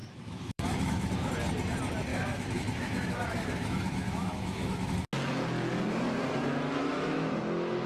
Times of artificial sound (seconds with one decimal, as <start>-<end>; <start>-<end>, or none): 0.0-1.3; 2.1-4.9; 6.8-7.4